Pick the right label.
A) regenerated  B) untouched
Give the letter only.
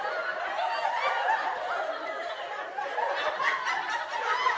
B